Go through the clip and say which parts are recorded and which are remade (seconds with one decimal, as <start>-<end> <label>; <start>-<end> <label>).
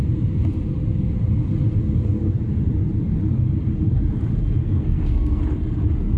0.0-4.6 recorded; 4.6-5.4 remade; 5.4-6.2 recorded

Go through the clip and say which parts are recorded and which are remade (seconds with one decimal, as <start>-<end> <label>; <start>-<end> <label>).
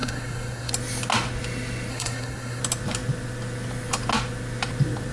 0.0-0.7 remade; 0.7-1.9 recorded; 1.9-2.6 remade; 2.6-5.1 recorded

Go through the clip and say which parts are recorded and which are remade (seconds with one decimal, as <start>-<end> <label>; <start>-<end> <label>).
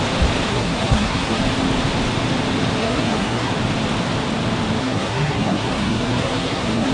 0.0-0.5 recorded; 0.5-1.4 remade; 1.4-2.8 recorded; 2.8-3.5 remade; 3.5-4.8 recorded; 4.8-6.9 remade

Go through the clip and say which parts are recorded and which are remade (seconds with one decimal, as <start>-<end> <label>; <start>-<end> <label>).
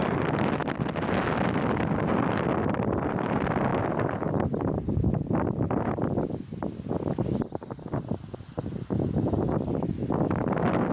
0.0-10.9 recorded